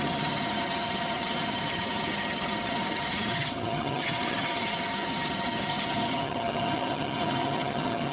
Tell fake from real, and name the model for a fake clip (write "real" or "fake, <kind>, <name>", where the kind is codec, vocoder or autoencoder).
fake, vocoder, HiFi-GAN